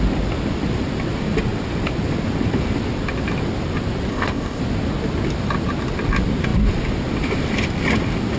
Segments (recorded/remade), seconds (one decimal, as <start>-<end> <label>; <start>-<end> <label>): 0.0-4.1 recorded; 4.1-4.6 remade; 4.6-8.4 recorded